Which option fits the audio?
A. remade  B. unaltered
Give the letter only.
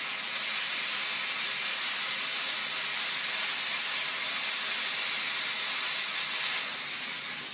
B